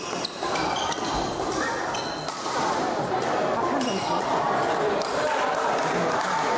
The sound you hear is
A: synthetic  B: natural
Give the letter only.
B